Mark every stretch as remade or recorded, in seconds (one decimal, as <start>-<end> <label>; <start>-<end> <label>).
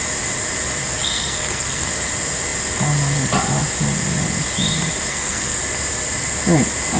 0.0-1.0 recorded; 1.0-1.9 remade; 1.9-5.1 recorded; 5.1-5.6 remade; 5.6-7.0 recorded